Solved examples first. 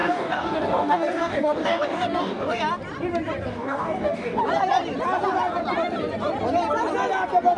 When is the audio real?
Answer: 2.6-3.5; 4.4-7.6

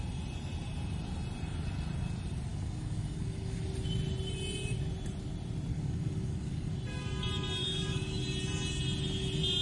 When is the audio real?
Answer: 0.0-2.5; 3.6-5.7; 6.8-7.6; 8.2-9.6

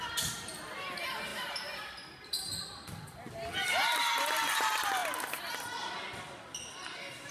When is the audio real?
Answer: 0.0-7.3

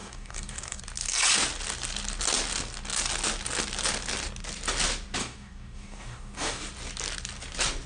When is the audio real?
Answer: 0.8-5.2; 6.6-7.9